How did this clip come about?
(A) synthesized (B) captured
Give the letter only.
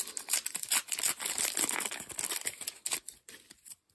B